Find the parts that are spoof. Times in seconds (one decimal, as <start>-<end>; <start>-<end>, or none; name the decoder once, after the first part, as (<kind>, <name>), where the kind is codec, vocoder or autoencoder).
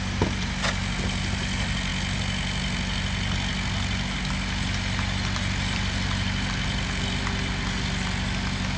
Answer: none